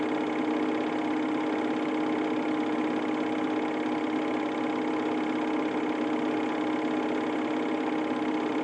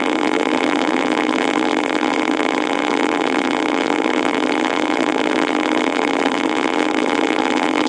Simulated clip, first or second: second